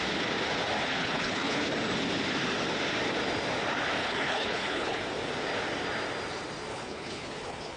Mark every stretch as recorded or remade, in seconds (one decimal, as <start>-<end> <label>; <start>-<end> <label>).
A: 0.0-1.0 recorded; 1.0-1.7 remade; 1.7-4.0 recorded; 4.0-5.0 remade; 5.0-6.7 recorded; 6.7-7.8 remade

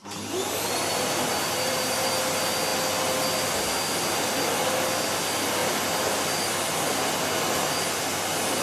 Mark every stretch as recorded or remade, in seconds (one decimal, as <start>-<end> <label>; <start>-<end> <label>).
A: 0.0-2.1 remade; 2.1-8.6 recorded

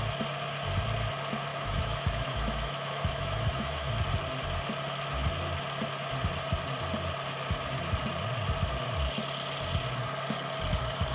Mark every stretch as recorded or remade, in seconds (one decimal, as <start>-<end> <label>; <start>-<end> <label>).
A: 0.0-1.5 recorded; 1.5-3.9 remade; 3.9-11.1 recorded